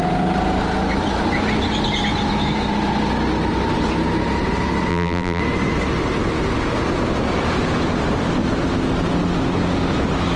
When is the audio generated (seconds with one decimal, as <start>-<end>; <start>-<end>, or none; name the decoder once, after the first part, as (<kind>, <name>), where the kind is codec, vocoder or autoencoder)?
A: 4.9-5.4 (vocoder, BigVGAN v2)